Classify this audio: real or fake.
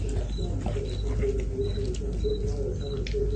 real